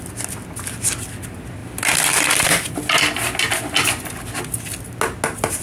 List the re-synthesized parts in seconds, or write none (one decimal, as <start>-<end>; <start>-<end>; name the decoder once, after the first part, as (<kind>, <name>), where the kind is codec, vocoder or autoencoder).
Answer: none